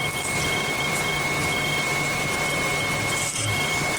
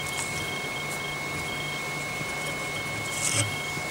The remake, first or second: first